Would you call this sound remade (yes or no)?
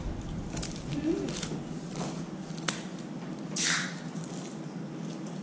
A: no